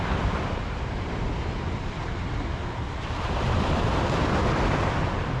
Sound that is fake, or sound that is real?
real